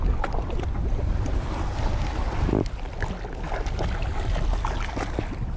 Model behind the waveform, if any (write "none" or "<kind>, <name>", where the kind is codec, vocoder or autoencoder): none